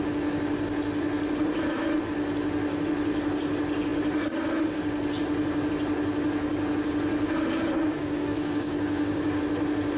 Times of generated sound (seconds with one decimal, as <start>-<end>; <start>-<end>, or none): 7.9-9.4